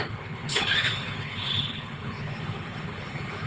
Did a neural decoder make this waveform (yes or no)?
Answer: yes